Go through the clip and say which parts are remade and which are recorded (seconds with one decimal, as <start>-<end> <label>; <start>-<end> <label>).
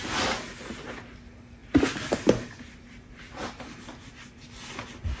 0.0-5.2 recorded